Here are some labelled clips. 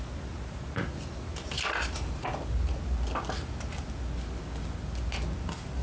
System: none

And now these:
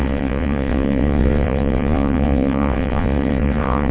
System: vocoder, WaveNeXt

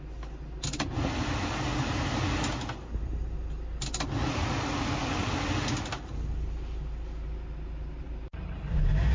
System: none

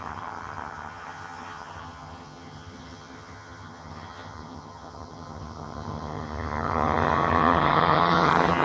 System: vocoder, HiFi-GAN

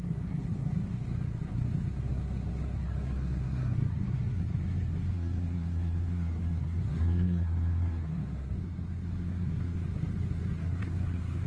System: codec, SNAC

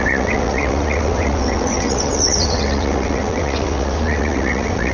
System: vocoder, WaveNeXt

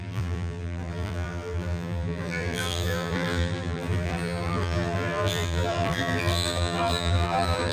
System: vocoder, BigVGAN v2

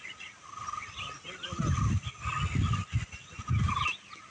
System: none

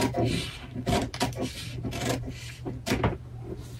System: none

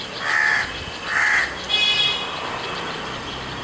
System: none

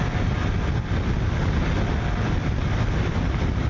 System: none